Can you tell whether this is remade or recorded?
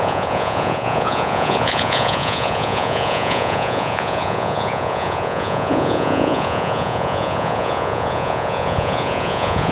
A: remade